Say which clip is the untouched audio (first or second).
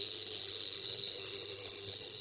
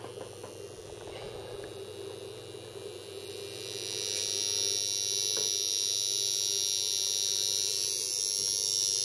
second